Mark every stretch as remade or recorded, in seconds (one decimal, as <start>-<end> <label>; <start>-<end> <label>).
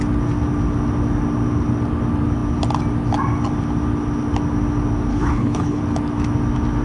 0.0-5.1 recorded; 5.1-5.8 remade; 5.8-6.8 recorded